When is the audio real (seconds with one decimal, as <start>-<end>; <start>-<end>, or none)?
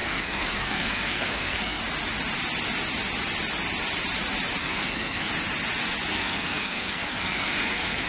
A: 1.8-4.6; 5.3-6.1